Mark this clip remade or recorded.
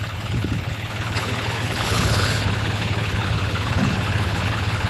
remade